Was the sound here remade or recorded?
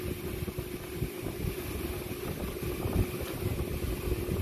recorded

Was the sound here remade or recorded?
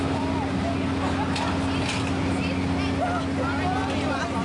recorded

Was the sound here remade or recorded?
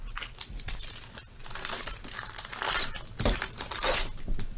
recorded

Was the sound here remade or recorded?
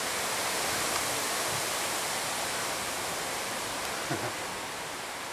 recorded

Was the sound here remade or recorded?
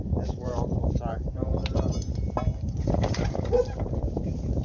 remade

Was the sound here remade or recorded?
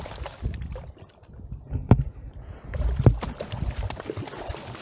recorded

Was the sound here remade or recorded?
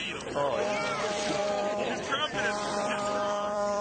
remade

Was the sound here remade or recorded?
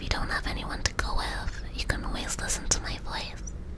recorded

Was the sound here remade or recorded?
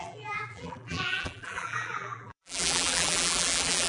remade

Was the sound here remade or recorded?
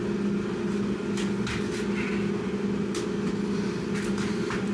recorded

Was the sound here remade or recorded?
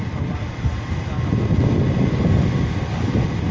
recorded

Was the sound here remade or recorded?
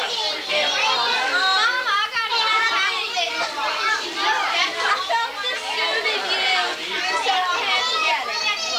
recorded